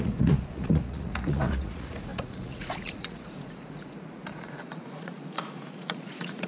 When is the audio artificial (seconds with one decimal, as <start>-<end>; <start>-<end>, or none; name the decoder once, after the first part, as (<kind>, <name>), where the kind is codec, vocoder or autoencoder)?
0.0-6.5 (vocoder, Vocos)